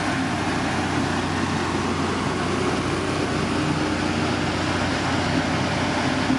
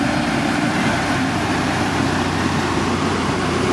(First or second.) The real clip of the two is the first